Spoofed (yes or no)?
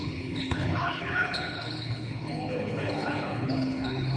yes